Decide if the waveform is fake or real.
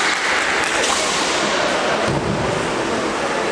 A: real